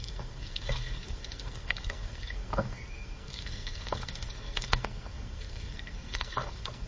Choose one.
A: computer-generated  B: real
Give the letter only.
A